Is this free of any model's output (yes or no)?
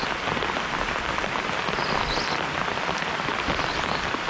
yes